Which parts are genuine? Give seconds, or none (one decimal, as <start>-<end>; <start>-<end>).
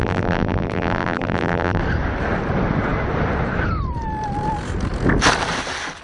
1.8-6.0